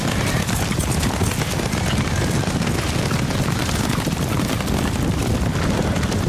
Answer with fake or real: real